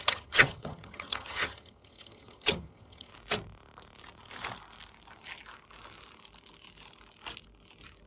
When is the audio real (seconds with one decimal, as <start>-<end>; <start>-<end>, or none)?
3.1-8.1